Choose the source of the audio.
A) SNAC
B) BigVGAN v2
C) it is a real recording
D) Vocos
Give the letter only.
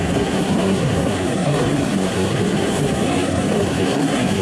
A